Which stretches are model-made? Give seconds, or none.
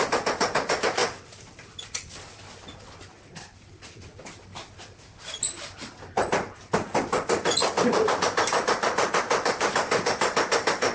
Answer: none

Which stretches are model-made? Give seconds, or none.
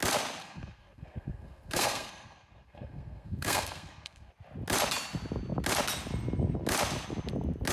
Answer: 0.4-4.3 (codec, SNAC)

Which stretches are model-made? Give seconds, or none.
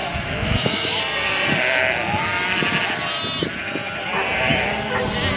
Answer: 0.0-1.0 (autoencoder, DAC-VAE)